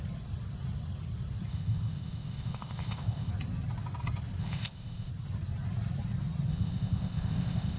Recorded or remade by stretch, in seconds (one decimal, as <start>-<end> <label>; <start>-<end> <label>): 0.0-1.5 recorded; 1.5-3.3 remade; 3.3-4.4 recorded; 4.4-5.1 remade; 5.1-6.5 recorded; 6.5-7.8 remade